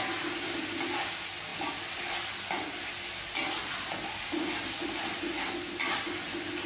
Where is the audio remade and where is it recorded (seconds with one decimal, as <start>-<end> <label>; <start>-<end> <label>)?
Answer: 0.0-6.7 recorded